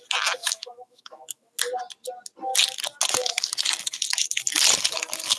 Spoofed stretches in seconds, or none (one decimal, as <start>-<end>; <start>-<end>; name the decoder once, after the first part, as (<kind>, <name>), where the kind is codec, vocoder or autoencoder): 0.4-1.6 (autoencoder, DAC-VAE)